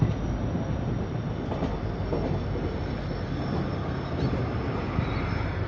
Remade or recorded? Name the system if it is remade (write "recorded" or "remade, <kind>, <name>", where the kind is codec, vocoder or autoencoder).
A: recorded